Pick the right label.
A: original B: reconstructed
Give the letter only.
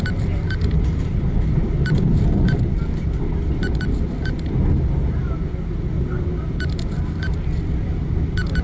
A